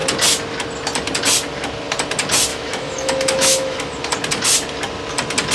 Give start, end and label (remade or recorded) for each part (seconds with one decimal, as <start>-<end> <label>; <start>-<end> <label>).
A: 0.0-2.5 recorded; 2.5-3.9 remade; 3.9-5.5 recorded